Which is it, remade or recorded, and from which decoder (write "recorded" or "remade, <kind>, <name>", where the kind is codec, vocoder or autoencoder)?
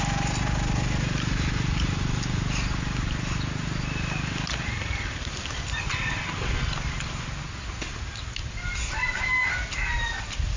recorded